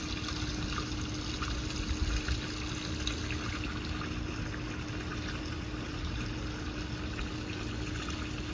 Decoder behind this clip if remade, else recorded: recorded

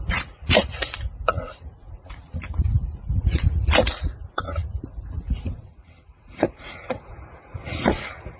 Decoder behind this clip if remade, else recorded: remade, vocoder, Vocos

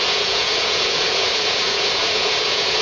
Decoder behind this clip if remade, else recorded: remade, vocoder, Vocos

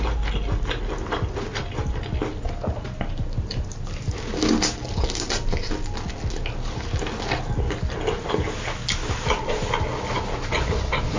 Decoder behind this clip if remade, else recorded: recorded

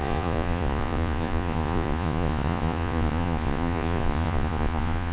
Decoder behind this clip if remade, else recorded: remade, vocoder, Vocos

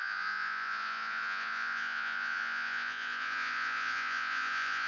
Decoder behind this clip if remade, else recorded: remade, vocoder, Vocos